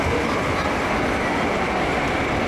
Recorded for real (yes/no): yes